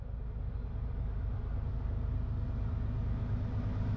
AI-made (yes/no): no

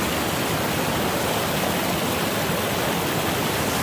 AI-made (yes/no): no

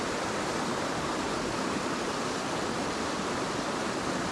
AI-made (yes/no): no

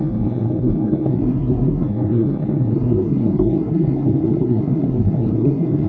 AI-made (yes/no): yes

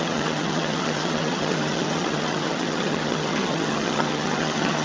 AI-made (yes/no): yes